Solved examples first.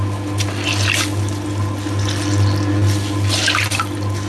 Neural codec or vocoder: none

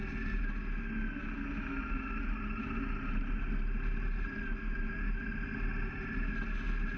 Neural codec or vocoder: none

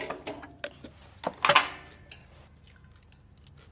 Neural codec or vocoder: none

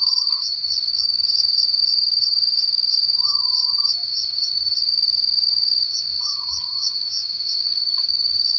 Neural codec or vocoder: autoencoder, DAC-VAE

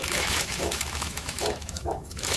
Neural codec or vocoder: autoencoder, DAC-VAE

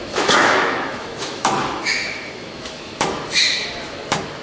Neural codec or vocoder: autoencoder, DAC-VAE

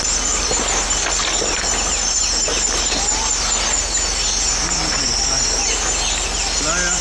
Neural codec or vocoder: none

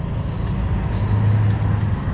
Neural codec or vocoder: none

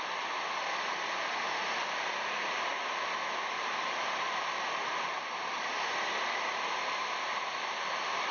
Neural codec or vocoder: none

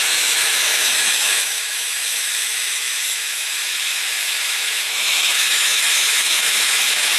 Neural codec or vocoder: autoencoder, DAC-VAE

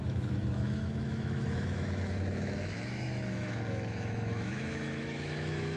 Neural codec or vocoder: autoencoder, DAC-VAE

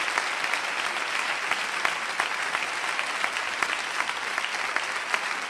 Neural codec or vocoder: none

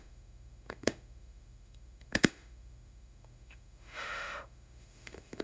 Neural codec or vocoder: autoencoder, DAC-VAE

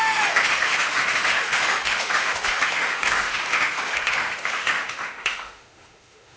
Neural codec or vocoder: autoencoder, DAC-VAE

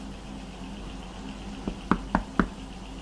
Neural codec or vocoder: none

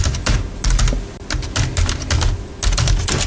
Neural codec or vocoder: none